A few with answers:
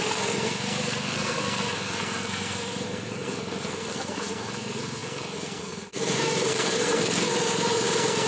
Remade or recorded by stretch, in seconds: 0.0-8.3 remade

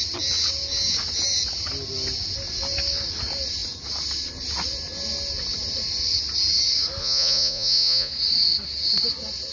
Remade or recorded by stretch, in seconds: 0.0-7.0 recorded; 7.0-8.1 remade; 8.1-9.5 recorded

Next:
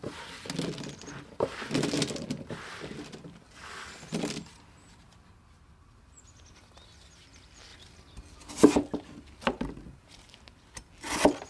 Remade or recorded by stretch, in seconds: 0.0-11.5 recorded

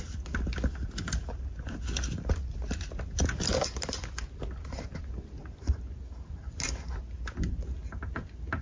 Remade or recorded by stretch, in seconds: 0.0-8.6 recorded

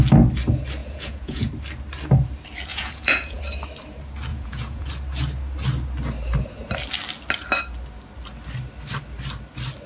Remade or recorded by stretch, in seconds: 0.0-0.8 recorded; 0.8-1.5 remade; 1.5-2.7 recorded; 2.7-3.4 remade; 3.4-4.3 recorded; 4.3-4.9 remade; 4.9-9.9 recorded

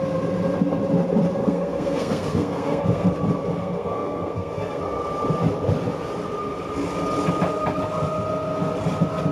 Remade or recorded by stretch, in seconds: 0.0-1.4 recorded; 1.4-3.1 remade; 3.1-3.6 recorded; 3.6-4.8 remade; 4.8-9.3 recorded

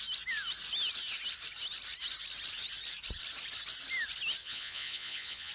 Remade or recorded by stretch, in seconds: 0.0-4.4 recorded; 4.4-5.5 remade

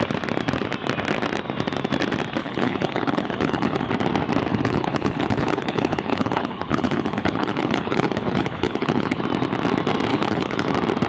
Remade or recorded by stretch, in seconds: 0.0-2.4 recorded; 2.4-3.9 remade; 3.9-4.5 recorded; 4.5-9.2 remade; 9.2-10.1 recorded; 10.1-10.7 remade; 10.7-11.1 recorded